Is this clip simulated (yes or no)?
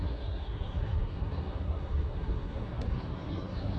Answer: yes